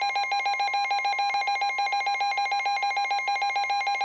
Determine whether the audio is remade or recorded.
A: recorded